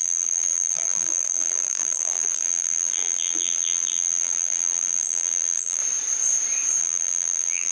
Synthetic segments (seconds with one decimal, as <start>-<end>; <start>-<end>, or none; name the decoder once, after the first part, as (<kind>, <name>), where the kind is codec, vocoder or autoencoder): 0.0-5.8 (vocoder, BigVGAN v2); 6.8-7.7